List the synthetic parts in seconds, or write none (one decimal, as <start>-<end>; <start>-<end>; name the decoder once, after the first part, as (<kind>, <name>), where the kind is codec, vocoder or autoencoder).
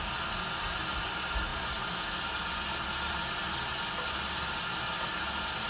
none